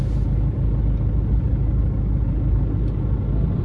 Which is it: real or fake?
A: real